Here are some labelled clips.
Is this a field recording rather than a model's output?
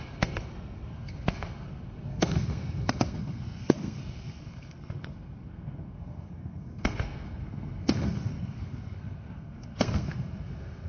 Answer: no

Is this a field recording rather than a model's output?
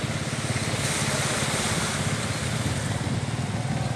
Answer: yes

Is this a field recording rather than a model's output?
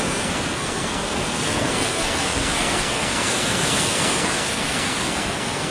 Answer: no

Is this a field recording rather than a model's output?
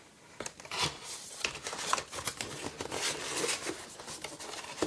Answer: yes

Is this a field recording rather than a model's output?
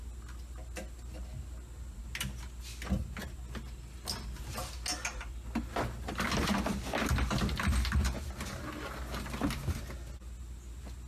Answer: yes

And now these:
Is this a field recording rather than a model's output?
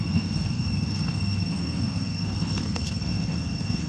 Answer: no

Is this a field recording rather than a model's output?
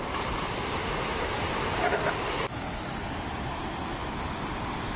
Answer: yes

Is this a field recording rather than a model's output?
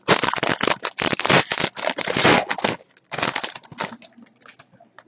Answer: yes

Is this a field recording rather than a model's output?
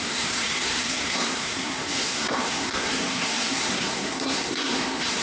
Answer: no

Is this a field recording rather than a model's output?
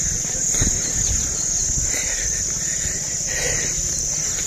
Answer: yes